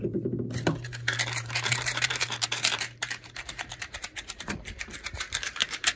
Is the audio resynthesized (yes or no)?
yes